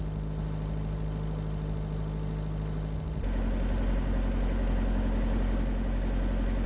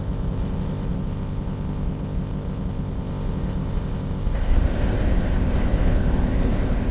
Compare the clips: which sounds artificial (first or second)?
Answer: second